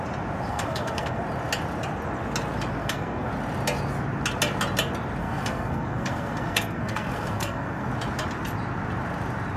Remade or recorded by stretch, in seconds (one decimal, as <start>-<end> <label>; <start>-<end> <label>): 0.0-0.5 recorded; 0.5-1.2 remade; 1.2-2.8 recorded; 2.8-3.3 remade; 3.3-5.2 recorded; 5.2-7.9 remade; 7.9-9.6 recorded